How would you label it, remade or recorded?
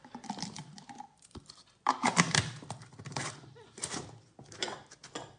remade